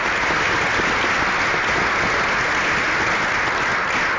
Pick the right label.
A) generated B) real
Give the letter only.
B